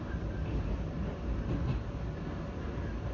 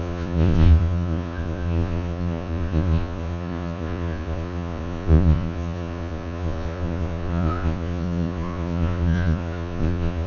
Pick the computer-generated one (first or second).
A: second